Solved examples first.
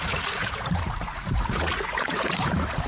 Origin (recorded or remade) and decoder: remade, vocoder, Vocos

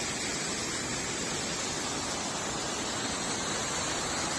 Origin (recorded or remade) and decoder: recorded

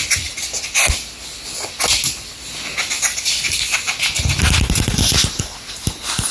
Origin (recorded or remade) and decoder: recorded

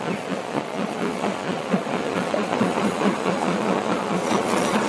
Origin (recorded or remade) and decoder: remade, vocoder, Vocos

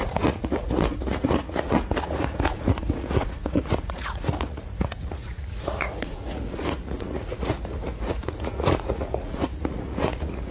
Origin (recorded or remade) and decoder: remade, vocoder, Vocos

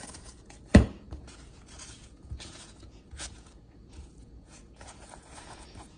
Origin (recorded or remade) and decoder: remade, vocoder, Vocos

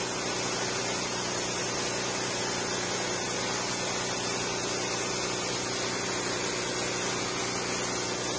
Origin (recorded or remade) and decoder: recorded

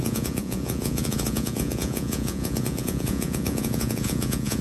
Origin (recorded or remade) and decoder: remade, vocoder, Vocos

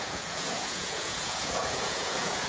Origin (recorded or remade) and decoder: remade, vocoder, Vocos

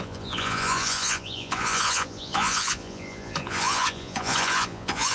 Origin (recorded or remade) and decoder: remade, vocoder, Vocos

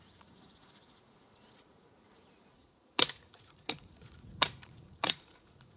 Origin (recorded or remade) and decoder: remade, vocoder, Vocos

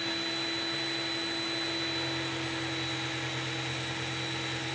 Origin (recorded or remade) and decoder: recorded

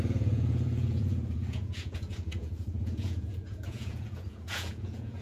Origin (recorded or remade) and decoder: remade, vocoder, Vocos